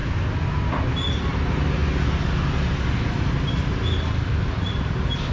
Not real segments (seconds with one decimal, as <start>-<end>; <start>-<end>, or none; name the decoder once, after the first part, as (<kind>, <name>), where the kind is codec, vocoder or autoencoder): none